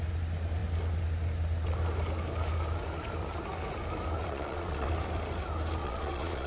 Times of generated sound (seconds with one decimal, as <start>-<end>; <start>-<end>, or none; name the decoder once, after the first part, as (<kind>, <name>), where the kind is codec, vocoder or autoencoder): 4.2-4.9 (vocoder, Vocos); 5.8-6.5